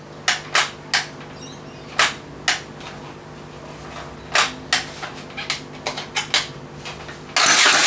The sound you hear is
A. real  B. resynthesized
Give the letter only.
A